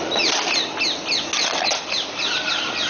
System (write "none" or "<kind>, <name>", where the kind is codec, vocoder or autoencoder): none